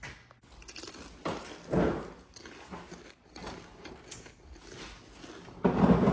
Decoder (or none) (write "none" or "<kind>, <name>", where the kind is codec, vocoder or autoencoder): none